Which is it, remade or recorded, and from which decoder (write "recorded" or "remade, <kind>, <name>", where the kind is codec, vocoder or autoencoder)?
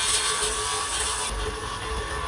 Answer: recorded